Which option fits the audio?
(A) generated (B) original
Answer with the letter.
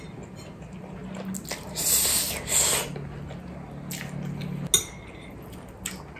B